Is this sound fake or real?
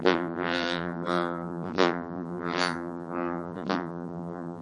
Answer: fake